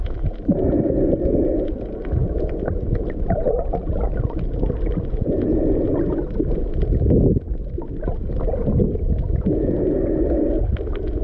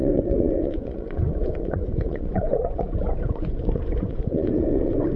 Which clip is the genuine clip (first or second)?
first